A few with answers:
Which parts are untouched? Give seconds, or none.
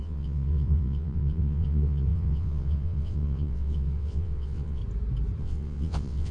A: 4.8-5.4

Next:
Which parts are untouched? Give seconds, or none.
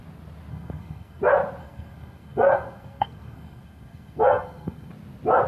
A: 0.0-0.5; 1.2-1.6; 4.9-5.5